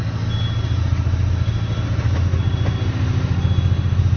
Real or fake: real